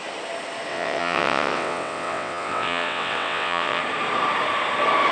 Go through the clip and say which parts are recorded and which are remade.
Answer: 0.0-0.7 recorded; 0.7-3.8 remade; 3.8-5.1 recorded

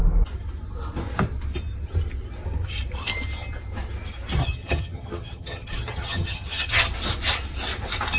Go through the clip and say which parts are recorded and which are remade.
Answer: 0.0-4.4 recorded; 4.4-6.9 remade; 6.9-8.2 recorded